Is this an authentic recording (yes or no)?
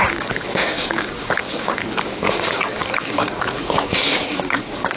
no